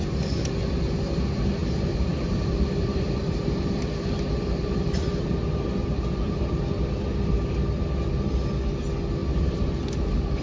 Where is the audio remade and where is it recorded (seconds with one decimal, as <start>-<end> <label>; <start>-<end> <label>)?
0.0-1.6 recorded; 1.6-6.5 remade; 6.5-9.2 recorded; 9.2-9.7 remade; 9.7-10.4 recorded